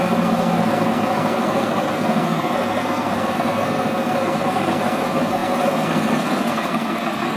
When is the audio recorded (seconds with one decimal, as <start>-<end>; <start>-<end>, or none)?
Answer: none